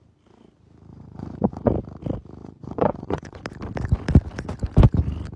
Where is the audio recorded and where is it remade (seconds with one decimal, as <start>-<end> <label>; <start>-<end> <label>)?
0.0-0.9 recorded; 0.9-1.7 remade; 1.7-2.4 recorded; 2.4-3.4 remade; 3.4-5.4 recorded

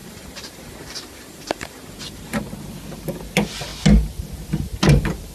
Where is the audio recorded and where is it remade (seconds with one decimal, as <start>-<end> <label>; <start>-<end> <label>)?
0.0-2.4 remade; 2.4-5.3 recorded